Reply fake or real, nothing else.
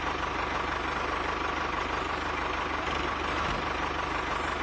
real